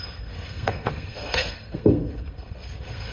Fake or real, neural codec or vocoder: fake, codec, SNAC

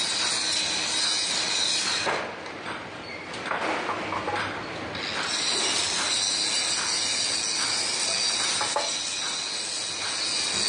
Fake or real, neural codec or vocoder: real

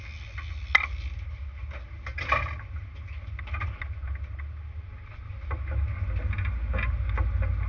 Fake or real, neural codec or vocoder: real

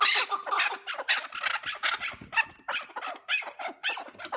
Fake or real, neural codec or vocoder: real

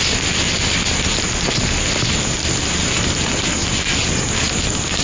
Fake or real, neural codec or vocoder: real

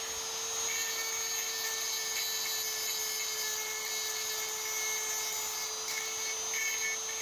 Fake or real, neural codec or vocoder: real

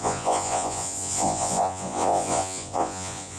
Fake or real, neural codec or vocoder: fake, vocoder, Vocos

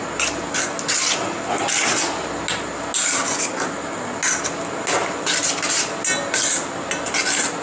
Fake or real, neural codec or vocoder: real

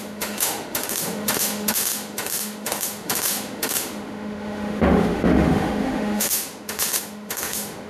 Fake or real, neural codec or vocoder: fake, autoencoder, DAC-VAE